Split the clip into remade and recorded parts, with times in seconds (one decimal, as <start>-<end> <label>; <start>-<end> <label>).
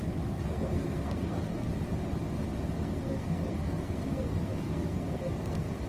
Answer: 0.0-1.7 remade; 1.7-2.8 recorded; 2.8-5.9 remade